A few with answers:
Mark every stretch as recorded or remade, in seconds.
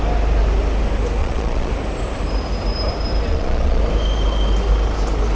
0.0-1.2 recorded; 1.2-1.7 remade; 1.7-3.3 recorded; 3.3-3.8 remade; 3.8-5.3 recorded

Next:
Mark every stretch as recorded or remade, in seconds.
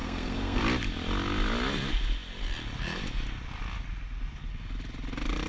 0.0-0.6 remade; 0.6-5.5 recorded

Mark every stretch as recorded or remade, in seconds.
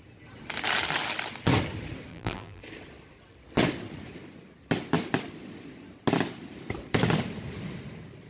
0.0-2.1 recorded; 2.1-2.6 remade; 2.6-8.3 recorded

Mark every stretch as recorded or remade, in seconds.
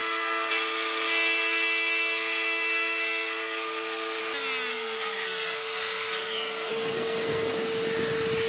0.0-4.2 remade; 4.2-4.7 recorded; 4.7-7.5 remade; 7.5-8.5 recorded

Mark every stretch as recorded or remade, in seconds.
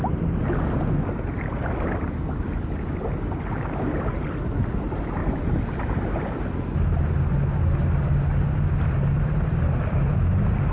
0.0-10.7 recorded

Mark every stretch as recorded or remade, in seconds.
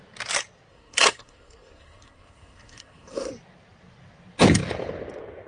0.0-0.7 recorded; 0.7-3.3 remade; 3.3-5.5 recorded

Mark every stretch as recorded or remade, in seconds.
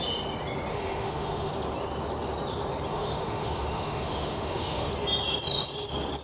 0.0-0.7 recorded; 0.7-1.5 remade; 1.5-2.9 recorded; 2.9-4.9 remade; 4.9-6.2 recorded